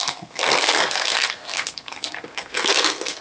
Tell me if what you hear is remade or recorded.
remade